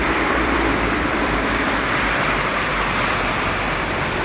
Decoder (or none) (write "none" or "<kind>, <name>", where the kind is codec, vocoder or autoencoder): vocoder, BigVGAN v2